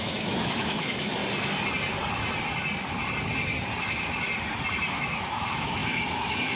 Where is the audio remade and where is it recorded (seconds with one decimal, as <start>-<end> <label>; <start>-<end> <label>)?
0.0-1.2 remade; 1.2-4.9 recorded; 4.9-6.6 remade